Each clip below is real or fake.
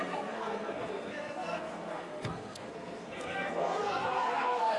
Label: fake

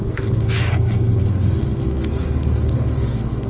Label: fake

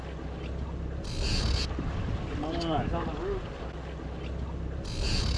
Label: real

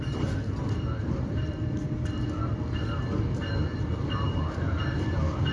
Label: real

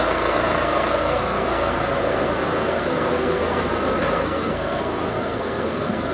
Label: fake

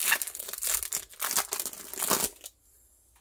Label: real